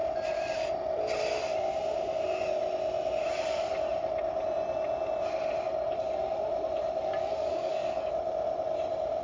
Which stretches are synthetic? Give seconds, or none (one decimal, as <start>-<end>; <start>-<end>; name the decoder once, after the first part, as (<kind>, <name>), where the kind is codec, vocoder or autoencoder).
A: 7.2-8.1 (codec, DAC)